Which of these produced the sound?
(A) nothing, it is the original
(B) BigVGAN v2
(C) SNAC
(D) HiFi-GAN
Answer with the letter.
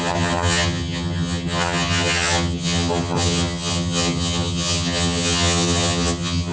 D